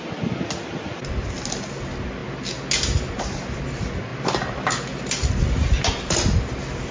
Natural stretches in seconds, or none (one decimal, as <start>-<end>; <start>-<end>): 0.0-6.9